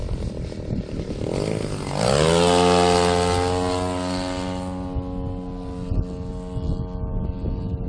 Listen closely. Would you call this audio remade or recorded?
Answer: recorded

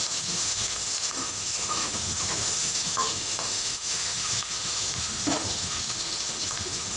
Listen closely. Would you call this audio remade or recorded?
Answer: remade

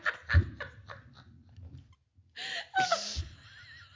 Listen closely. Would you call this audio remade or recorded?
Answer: recorded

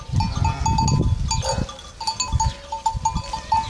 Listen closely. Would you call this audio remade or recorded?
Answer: recorded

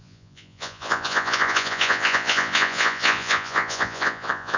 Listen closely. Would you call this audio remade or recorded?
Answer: remade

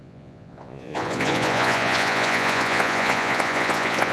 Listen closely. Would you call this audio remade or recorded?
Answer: remade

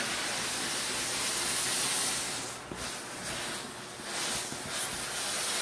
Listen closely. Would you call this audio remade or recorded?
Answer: recorded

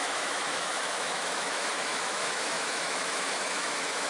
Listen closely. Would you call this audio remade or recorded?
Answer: remade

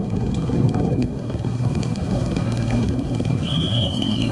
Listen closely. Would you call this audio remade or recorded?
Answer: remade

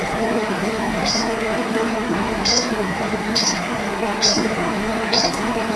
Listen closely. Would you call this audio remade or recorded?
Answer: remade